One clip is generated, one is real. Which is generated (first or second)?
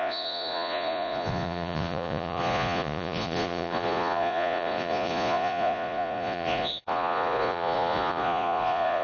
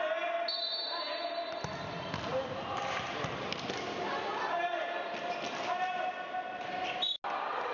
first